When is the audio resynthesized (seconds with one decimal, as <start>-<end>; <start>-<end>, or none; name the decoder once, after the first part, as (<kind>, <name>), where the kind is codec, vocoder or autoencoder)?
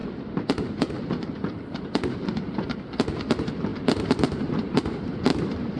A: 3.7-5.8 (vocoder, BigVGAN v2)